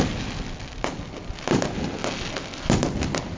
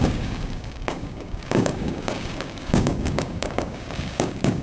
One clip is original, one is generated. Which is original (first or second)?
first